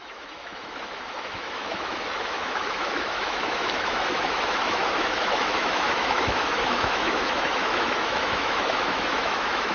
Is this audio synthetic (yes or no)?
yes